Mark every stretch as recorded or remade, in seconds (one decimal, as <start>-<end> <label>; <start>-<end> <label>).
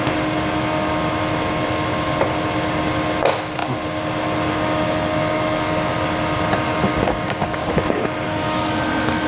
0.0-6.9 recorded; 6.9-7.7 remade; 7.7-9.3 recorded